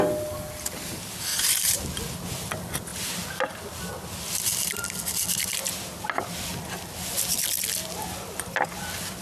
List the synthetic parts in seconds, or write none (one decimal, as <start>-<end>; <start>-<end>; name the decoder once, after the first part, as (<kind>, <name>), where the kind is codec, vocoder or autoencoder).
1.3-1.8 (vocoder, BigVGAN v2)